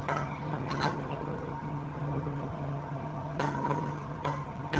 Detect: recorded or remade remade